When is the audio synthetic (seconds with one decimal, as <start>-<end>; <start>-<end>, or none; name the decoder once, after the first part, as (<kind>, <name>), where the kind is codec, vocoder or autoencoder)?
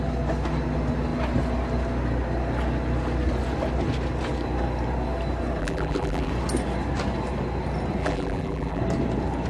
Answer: 5.6-6.3 (vocoder, BigVGAN v2); 8.0-8.8